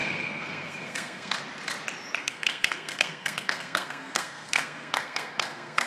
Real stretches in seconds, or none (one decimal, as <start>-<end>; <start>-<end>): 1.4-2.2